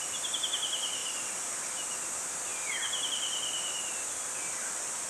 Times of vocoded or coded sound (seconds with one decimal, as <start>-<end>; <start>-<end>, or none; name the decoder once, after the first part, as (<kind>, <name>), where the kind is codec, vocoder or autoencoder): 1.0-1.6 (vocoder, BigVGAN v2); 2.5-3.1